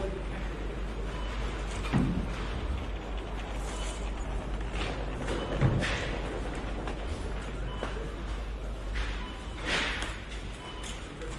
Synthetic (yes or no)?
no